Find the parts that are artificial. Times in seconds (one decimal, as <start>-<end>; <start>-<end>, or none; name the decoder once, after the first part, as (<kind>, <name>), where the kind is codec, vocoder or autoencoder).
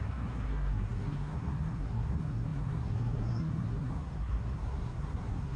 0.0-5.6 (codec, SNAC)